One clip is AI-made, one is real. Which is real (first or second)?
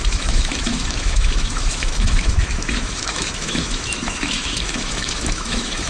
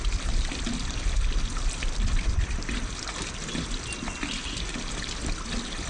second